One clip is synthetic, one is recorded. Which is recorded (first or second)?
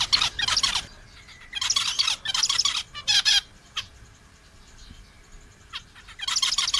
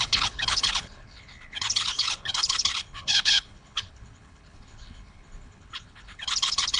first